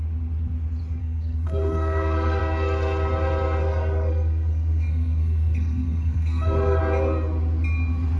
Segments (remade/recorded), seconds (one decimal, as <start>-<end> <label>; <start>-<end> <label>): 0.0-1.0 recorded; 1.0-2.4 remade; 2.4-3.6 recorded; 3.6-6.8 remade; 6.8-8.2 recorded